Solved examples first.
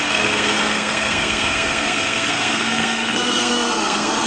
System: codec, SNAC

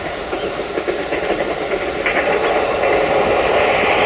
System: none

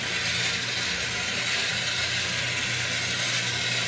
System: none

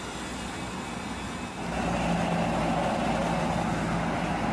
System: none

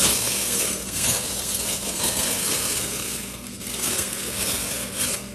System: codec, SNAC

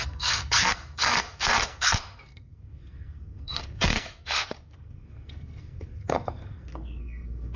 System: codec, SNAC